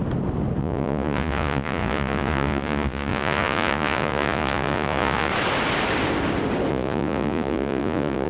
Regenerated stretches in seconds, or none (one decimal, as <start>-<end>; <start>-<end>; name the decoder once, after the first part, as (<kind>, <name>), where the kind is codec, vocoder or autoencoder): 0.6-5.3 (vocoder, Vocos); 6.7-8.3